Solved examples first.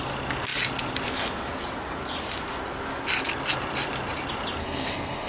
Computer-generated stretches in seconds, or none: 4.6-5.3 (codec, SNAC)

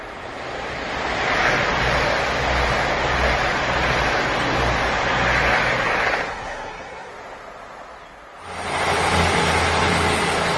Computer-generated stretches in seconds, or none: 6.3-7.1 (codec, SNAC)

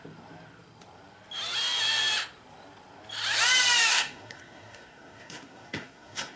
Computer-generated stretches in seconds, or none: 3.9-6.4 (codec, SNAC)

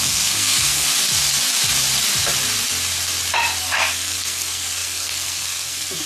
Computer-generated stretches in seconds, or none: 0.0-0.9 (codec, SNAC); 3.6-6.1

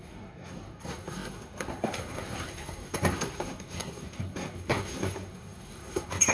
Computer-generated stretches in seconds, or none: 0.0-6.3 (codec, SNAC)